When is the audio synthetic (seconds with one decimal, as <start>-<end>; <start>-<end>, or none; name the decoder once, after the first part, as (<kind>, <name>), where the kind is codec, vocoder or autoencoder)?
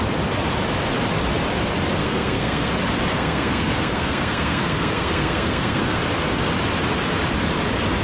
2.0-2.7 (codec, SNAC); 3.1-6.0